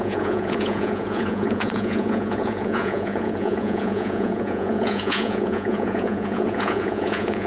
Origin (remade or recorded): remade